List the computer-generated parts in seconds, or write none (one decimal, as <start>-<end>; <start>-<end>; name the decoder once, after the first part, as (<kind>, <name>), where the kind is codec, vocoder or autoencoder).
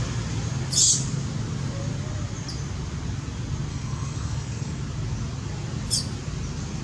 3.7-4.8 (codec, SNAC)